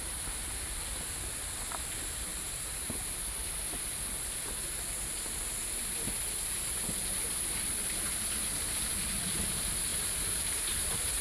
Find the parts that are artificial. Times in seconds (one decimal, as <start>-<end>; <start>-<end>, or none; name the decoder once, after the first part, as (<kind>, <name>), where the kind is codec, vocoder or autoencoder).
2.3-3.0 (vocoder, BigVGAN v2); 9.9-11.2